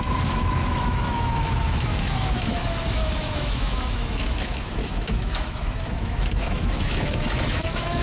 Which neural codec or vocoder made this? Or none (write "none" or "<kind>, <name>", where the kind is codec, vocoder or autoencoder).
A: autoencoder, DAC-VAE